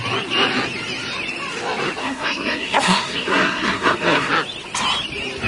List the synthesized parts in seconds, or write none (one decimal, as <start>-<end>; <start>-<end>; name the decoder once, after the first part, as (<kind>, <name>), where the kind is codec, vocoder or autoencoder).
2.0-4.3 (codec, SNAC)